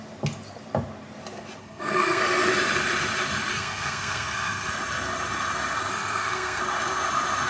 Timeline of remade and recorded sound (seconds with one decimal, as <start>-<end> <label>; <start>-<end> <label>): 0.0-1.6 recorded; 1.6-2.2 remade; 2.2-3.5 recorded; 3.5-4.7 remade; 4.7-5.9 recorded; 5.9-6.6 remade; 6.6-7.5 recorded